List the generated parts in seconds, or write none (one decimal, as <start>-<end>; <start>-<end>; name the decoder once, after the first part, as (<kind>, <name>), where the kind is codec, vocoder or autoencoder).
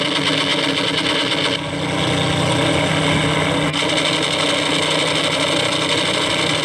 none